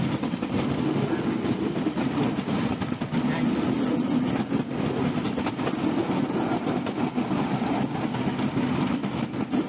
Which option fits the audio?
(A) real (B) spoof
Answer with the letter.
A